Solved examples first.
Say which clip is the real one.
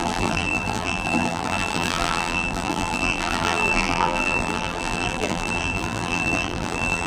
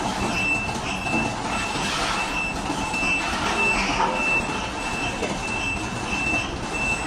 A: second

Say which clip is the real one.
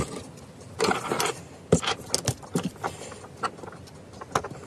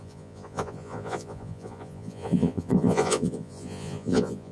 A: first